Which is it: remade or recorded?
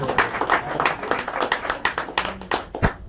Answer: recorded